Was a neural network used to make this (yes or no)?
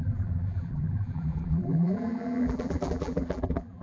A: yes